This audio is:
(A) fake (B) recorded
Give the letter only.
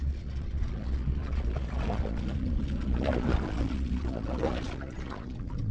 A